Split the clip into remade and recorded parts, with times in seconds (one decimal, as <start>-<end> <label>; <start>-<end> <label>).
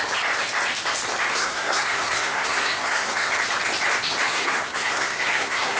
0.0-1.3 recorded; 1.3-3.3 remade; 3.3-4.2 recorded; 4.2-5.8 remade